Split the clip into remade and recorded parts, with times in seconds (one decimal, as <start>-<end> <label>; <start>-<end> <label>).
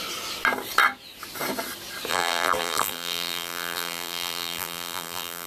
0.0-2.1 recorded; 2.1-5.5 remade